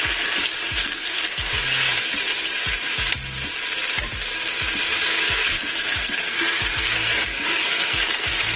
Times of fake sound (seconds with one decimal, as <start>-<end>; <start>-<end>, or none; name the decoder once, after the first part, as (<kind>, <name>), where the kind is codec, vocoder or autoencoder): 0.8-1.6 (codec, SNAC); 5.1-8.6